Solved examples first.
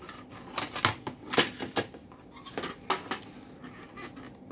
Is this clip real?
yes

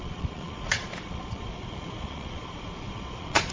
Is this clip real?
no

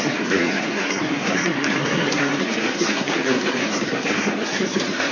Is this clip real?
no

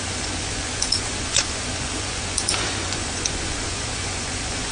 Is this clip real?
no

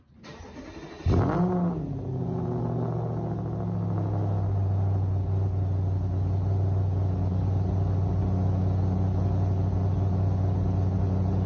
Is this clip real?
yes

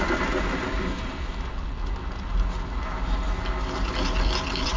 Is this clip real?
yes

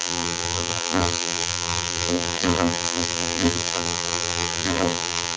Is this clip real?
no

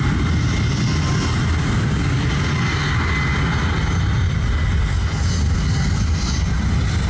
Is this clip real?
yes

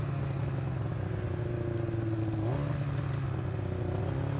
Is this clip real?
yes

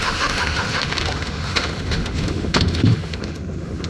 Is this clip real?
no